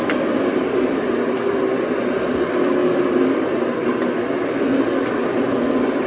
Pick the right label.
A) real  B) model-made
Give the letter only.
A